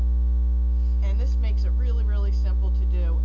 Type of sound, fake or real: real